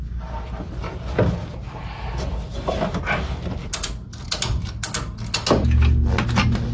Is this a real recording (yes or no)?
yes